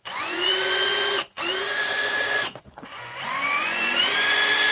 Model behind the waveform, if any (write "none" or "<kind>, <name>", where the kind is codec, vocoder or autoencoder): vocoder, Vocos